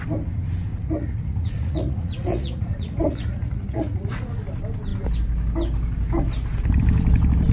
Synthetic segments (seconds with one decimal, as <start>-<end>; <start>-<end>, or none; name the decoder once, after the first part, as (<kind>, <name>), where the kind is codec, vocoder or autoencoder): 0.7-4.3 (vocoder, Vocos)